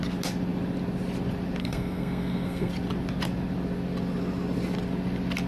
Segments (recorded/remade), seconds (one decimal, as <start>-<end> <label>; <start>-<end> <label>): 0.0-1.6 recorded; 1.6-2.7 remade; 2.7-5.5 recorded